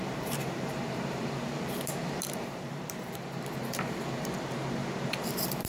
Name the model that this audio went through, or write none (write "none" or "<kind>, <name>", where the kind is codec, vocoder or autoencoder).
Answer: vocoder, BigVGAN v2